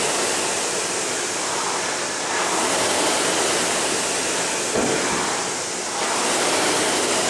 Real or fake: real